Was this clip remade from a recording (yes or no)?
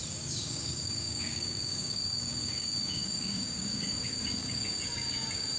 yes